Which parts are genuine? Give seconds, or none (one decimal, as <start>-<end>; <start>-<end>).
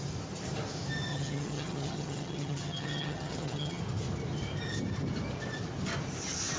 0.0-1.1; 3.8-6.6